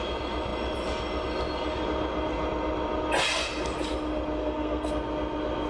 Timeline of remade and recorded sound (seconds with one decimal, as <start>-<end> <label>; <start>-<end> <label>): 0.0-4.4 recorded; 4.4-4.9 remade; 4.9-5.7 recorded